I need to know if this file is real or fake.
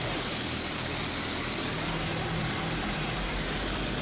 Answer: real